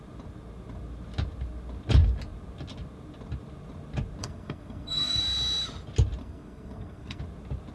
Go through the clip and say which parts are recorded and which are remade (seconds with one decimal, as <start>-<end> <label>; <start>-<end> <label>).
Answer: 0.0-4.2 recorded; 4.2-5.2 remade; 5.2-6.2 recorded; 6.2-7.2 remade; 7.2-7.7 recorded